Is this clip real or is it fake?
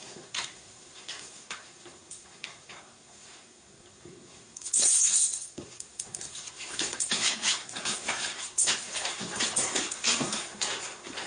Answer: fake